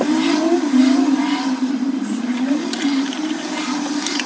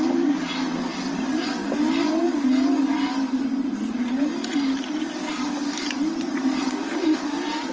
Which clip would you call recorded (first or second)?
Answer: second